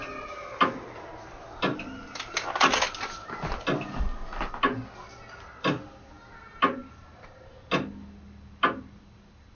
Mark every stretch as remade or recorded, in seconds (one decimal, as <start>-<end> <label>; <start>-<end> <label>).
0.0-9.5 recorded